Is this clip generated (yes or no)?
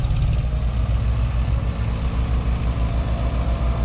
no